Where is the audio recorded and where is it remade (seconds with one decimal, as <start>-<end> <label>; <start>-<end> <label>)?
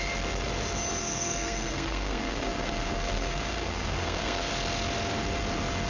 0.0-1.0 recorded; 1.0-4.5 remade; 4.5-5.9 recorded